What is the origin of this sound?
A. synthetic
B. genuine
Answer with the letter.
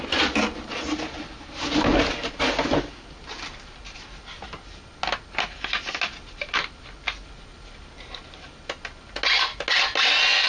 B